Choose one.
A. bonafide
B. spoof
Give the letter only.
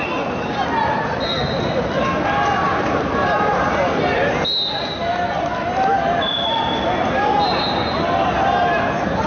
A